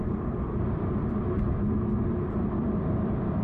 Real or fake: fake